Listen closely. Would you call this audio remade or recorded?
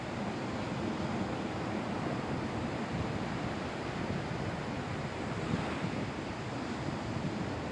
recorded